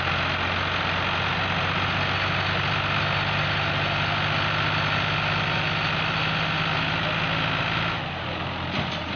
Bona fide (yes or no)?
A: yes